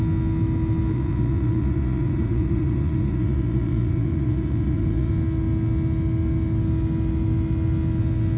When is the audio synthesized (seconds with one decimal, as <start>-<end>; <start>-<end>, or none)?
0.9-5.1